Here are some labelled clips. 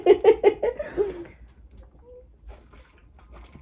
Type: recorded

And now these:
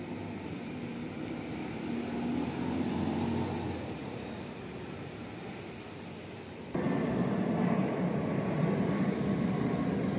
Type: recorded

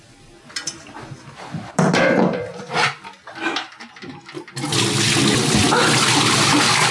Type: recorded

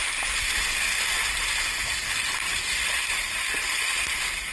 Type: recorded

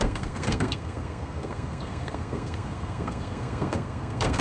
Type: remade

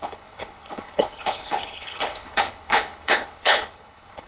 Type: remade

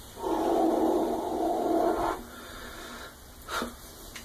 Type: recorded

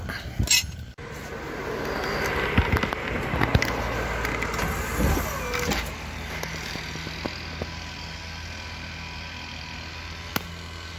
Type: recorded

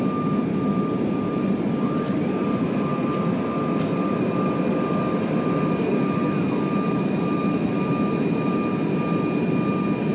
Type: recorded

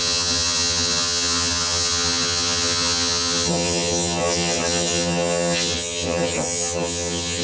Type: remade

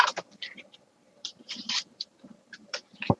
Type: remade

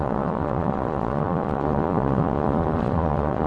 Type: remade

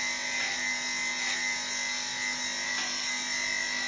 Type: recorded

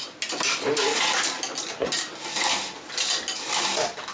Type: recorded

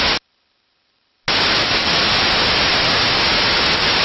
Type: recorded